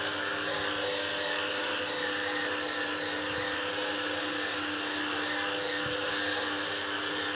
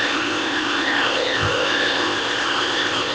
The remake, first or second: second